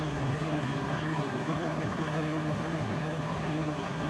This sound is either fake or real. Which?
fake